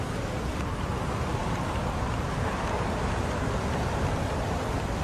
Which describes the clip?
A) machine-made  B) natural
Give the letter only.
B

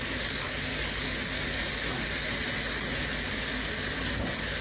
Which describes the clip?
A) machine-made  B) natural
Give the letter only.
B